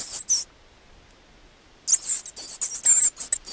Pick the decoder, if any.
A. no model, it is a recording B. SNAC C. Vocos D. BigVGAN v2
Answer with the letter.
A